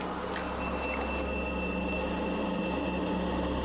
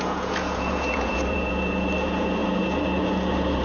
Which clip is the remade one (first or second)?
second